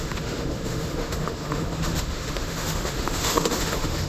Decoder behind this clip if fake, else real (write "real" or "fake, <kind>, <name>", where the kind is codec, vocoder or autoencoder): fake, autoencoder, DAC-VAE